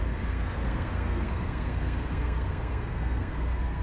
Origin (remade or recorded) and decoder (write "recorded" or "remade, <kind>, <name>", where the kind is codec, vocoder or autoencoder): remade, codec, SNAC